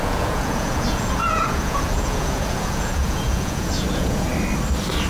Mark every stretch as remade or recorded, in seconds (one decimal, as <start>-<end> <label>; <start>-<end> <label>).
0.0-4.3 remade; 4.3-5.1 recorded